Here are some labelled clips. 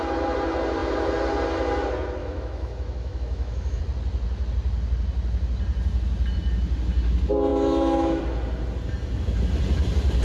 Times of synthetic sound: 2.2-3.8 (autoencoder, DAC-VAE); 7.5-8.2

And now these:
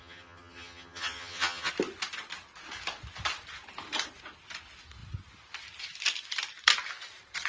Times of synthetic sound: 0.0-1.7 (vocoder, HiFi-GAN)